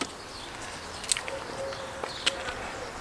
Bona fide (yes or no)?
yes